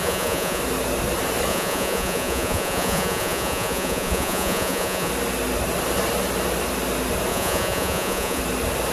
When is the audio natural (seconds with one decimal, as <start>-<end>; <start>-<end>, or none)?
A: 0.6-1.5; 5.1-7.3; 8.4-8.9